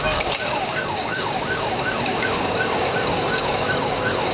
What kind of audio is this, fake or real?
fake